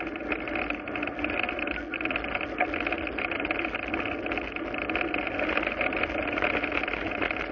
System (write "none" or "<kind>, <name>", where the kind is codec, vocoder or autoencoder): none